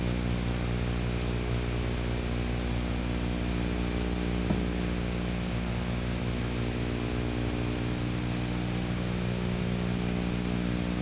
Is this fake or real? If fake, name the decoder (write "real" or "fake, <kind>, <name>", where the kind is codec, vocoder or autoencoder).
real